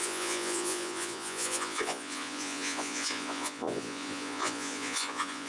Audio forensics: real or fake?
fake